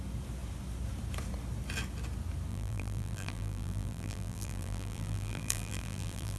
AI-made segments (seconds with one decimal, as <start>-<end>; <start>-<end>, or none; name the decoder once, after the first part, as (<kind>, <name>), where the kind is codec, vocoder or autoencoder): 2.5-6.4 (vocoder, BigVGAN v2)

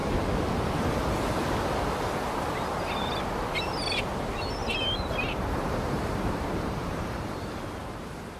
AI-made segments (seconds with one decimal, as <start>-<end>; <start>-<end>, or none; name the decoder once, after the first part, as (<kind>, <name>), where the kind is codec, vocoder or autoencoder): 4.0-8.4 (vocoder, BigVGAN v2)

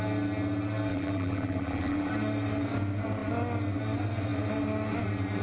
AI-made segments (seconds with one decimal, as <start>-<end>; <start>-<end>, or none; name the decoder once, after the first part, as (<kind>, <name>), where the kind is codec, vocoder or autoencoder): 0.9-2.1 (vocoder, BigVGAN v2)

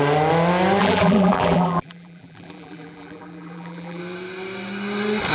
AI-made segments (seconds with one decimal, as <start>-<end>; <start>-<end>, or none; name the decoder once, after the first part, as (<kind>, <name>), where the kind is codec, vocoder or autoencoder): 0.8-4.0 (vocoder, BigVGAN v2)

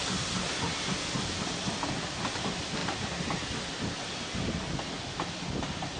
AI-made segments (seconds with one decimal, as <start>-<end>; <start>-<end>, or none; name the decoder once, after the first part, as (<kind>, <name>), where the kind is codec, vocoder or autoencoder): none

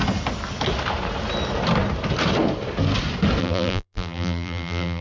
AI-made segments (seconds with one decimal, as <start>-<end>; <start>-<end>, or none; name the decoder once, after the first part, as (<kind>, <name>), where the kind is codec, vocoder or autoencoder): 3.4-5.0 (vocoder, BigVGAN v2)

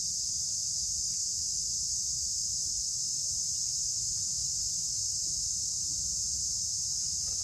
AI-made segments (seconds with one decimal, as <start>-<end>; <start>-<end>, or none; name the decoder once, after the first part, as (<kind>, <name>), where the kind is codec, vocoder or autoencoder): 0.0-0.6 (vocoder, BigVGAN v2); 1.8-7.4

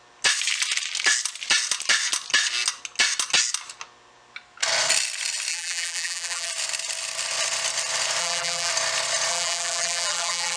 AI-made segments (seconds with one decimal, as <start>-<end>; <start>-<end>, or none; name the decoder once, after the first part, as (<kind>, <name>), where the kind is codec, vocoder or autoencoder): 5.5-6.5 (vocoder, BigVGAN v2); 8.2-8.7; 9.3-10.6